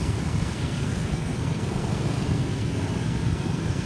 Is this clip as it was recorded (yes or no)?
no